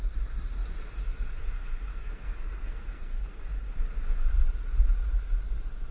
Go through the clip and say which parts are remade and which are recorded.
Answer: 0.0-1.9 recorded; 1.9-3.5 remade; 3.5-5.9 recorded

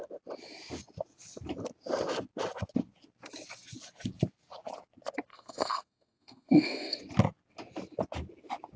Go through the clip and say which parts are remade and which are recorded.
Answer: 0.0-5.3 recorded; 5.3-7.0 remade; 7.0-8.8 recorded

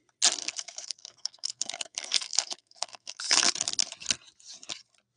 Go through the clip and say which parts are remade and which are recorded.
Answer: 0.0-0.4 recorded; 0.4-3.5 remade; 3.5-5.2 recorded

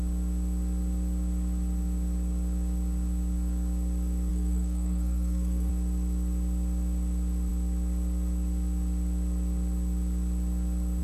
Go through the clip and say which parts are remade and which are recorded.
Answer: 0.0-4.3 recorded; 4.3-5.7 remade; 5.7-11.0 recorded